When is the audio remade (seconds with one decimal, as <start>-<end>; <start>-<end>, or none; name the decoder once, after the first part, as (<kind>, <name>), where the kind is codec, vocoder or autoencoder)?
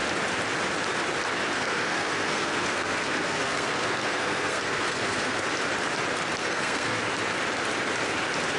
1.5-5.4 (codec, SNAC); 6.4-7.0